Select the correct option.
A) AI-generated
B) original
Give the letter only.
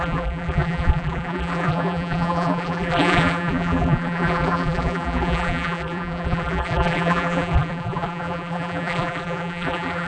A